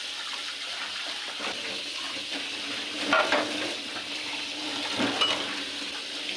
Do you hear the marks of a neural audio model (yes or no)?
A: no